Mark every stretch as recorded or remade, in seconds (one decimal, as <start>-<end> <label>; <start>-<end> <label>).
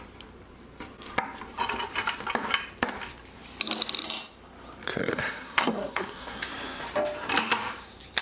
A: 0.0-5.0 recorded; 5.0-6.4 remade; 6.4-8.2 recorded